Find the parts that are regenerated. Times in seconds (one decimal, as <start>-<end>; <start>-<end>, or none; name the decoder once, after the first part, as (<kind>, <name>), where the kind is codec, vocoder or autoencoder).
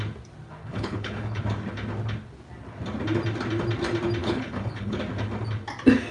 0.6-1.4 (codec, HILCodec); 4.2-5.0